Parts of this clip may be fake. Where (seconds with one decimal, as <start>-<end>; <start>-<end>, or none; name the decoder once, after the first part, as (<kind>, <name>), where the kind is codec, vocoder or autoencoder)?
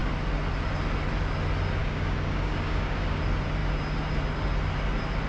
1.8-3.2 (codec, DAC)